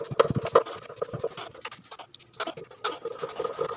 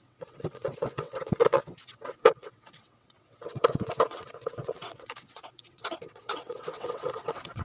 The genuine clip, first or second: first